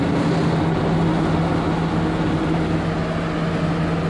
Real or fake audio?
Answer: real